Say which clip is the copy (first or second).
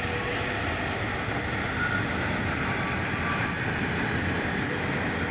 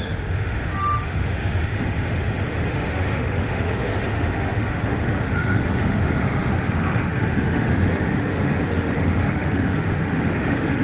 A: second